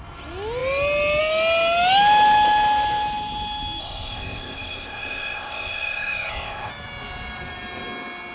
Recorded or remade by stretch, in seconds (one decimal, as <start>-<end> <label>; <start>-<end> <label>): 0.0-3.8 recorded; 3.8-6.7 remade; 6.7-8.3 recorded